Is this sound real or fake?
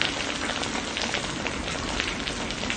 real